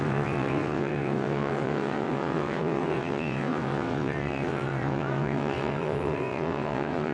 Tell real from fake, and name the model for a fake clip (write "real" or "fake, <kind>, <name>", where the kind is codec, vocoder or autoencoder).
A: fake, vocoder, WaveNeXt